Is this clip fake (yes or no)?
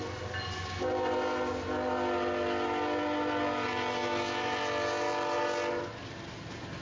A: no